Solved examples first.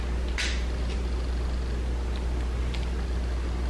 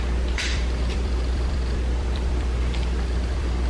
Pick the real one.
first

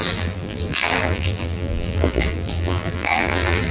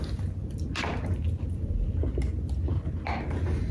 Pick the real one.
second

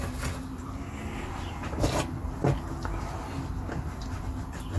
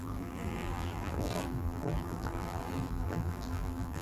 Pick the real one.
first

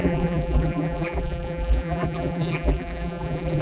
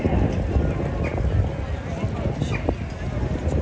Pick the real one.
second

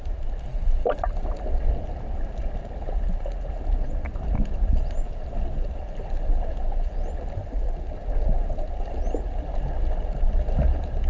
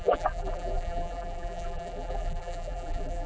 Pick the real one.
first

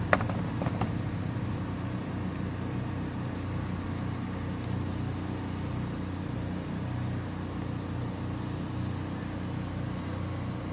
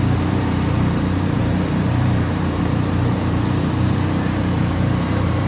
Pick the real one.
first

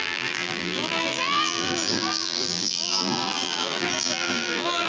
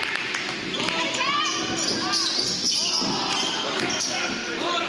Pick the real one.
second